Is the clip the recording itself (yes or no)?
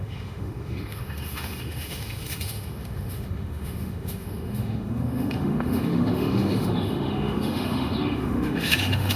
no